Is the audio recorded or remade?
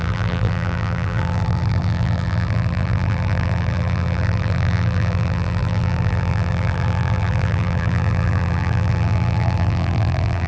remade